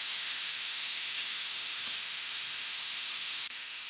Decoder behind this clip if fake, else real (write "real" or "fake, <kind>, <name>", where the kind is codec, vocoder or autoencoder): fake, autoencoder, DAC-VAE